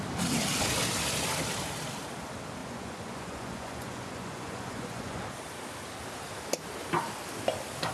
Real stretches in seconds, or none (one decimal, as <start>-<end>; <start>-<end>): 0.0-2.6; 5.2-7.9